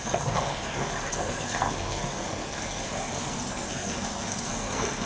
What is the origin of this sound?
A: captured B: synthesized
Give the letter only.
B